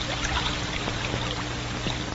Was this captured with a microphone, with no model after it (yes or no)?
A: yes